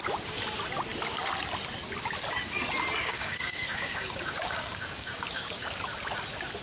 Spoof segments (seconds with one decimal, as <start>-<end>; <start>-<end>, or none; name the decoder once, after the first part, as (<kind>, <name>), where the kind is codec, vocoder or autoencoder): 3.0-5.8 (codec, DAC)